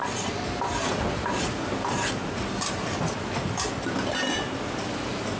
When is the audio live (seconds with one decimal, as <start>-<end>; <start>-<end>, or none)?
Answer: 0.9-5.4